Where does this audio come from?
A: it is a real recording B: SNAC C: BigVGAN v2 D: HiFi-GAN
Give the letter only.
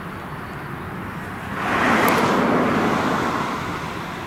A